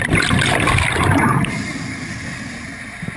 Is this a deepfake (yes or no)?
no